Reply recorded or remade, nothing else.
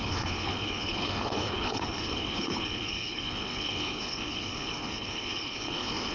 remade